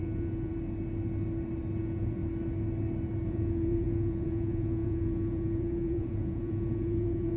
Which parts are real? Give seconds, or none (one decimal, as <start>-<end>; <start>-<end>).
0.5-1.8; 2.2-3.3

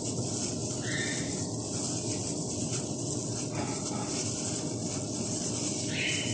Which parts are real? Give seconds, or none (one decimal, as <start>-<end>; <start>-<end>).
0.0-6.3

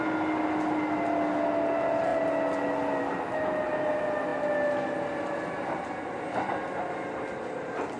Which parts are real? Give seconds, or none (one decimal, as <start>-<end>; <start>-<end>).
0.0-8.0

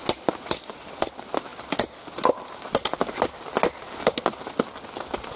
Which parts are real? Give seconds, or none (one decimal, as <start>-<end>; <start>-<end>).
0.0-5.4

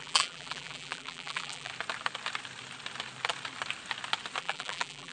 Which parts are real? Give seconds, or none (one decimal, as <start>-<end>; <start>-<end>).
1.7-4.4

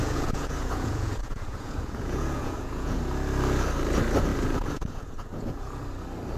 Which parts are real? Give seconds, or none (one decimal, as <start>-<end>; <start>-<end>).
3.0-4.3; 5.8-6.4